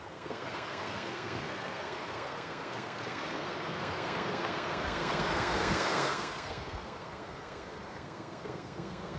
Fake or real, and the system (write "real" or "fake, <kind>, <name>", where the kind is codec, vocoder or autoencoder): fake, codec, SNAC